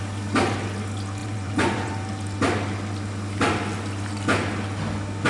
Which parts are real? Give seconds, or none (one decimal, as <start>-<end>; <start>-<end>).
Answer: 0.0-1.2; 1.9-5.3